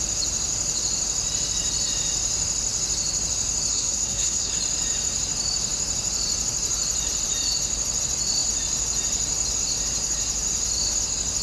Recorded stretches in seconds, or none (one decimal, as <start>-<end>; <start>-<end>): 0.0-3.7; 4.5-11.4